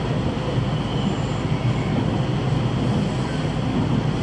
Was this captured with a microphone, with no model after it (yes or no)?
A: yes